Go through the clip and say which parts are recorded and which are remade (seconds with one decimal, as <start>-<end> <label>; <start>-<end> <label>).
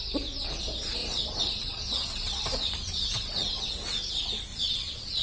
0.0-1.0 recorded; 1.0-4.1 remade; 4.1-4.5 recorded; 4.5-5.2 remade